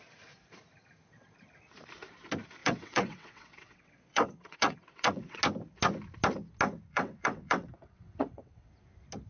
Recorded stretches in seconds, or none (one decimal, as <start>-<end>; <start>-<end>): 0.0-2.6; 5.4-6.9; 8.7-9.3